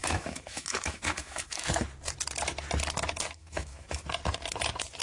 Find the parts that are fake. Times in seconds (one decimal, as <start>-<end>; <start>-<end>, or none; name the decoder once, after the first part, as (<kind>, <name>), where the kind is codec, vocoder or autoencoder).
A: 0.0-1.7 (autoencoder, DAC-VAE); 3.4-4.0